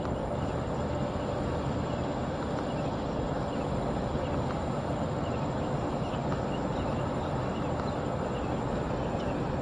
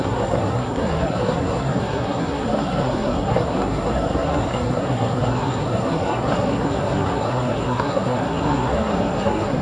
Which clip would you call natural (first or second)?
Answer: first